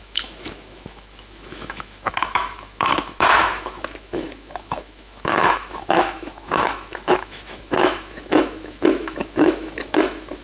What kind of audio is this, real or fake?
fake